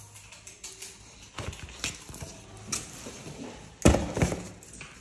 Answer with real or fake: real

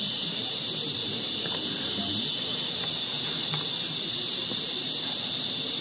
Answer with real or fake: fake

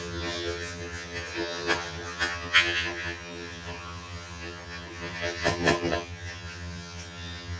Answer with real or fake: fake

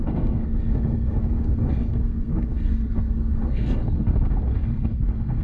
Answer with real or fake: fake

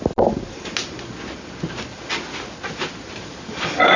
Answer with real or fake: real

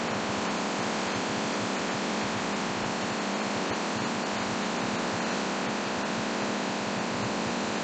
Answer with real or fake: real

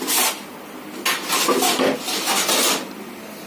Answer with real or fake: real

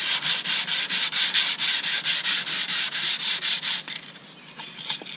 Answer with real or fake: real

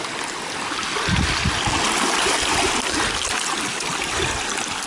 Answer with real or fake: real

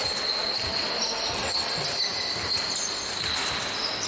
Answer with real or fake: real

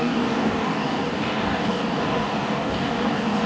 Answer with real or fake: fake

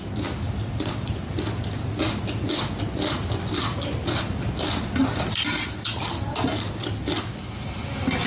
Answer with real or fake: fake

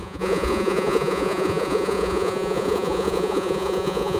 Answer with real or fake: fake